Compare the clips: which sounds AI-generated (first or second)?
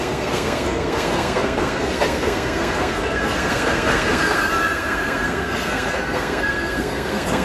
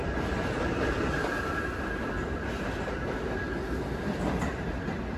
first